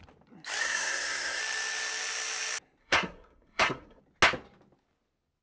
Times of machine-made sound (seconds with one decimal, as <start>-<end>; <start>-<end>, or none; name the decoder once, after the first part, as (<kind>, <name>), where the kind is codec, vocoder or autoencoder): 0.6-1.4 (codec, SNAC); 2.8-4.0